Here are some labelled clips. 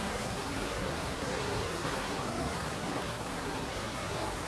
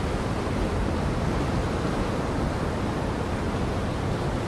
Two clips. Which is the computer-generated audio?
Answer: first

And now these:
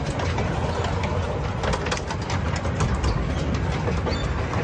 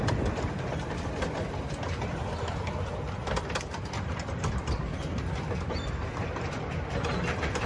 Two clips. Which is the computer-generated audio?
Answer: second